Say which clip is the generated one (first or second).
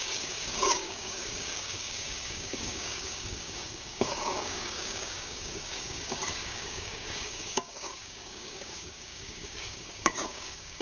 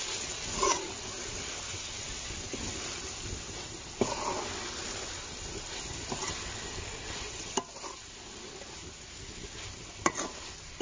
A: first